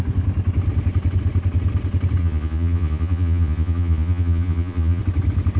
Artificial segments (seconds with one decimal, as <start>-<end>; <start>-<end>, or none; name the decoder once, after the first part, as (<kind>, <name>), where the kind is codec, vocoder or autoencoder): 2.2-5.0 (vocoder, Vocos)